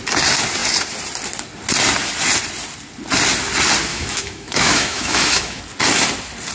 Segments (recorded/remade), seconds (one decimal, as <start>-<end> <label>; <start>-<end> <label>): 0.0-3.9 recorded; 3.9-5.6 remade; 5.6-6.5 recorded